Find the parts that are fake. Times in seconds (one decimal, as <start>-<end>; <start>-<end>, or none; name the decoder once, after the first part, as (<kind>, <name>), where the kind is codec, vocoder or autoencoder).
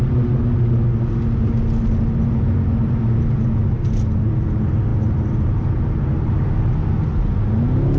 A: none